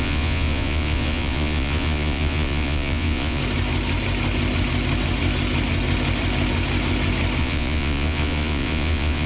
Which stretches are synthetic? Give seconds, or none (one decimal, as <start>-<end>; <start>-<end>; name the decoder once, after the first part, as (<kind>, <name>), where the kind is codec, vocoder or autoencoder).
0.0-3.4 (vocoder, Vocos); 7.4-9.3